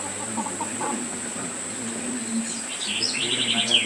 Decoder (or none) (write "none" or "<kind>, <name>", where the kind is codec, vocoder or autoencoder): none